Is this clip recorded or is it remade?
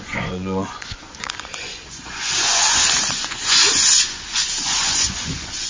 remade